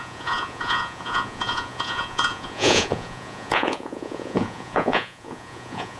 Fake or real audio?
fake